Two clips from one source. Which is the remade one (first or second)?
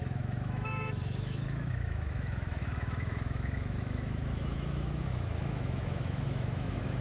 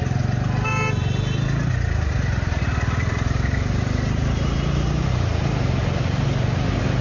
first